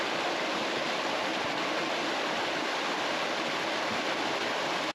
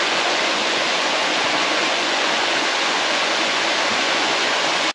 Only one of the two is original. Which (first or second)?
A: first